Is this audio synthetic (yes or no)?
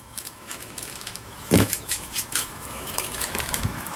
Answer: yes